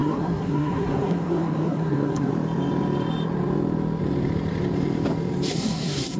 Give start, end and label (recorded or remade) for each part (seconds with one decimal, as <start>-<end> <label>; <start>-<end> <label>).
0.0-2.3 remade; 2.3-5.5 recorded; 5.5-6.2 remade